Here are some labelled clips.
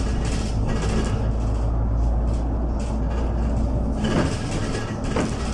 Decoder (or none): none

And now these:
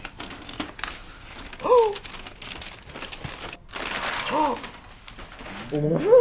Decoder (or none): none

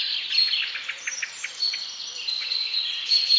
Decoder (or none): vocoder, BigVGAN v2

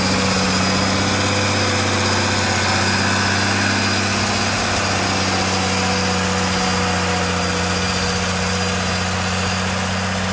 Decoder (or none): none